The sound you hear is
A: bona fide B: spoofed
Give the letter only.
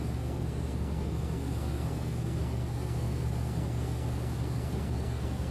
B